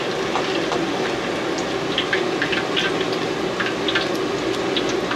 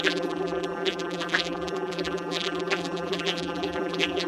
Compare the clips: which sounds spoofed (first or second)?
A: second